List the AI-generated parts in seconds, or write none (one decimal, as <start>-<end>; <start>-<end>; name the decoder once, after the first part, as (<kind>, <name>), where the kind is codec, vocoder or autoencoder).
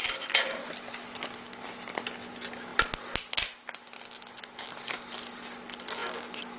none